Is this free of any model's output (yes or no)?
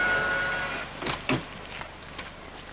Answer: yes